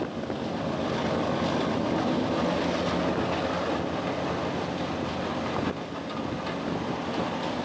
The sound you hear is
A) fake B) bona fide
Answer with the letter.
B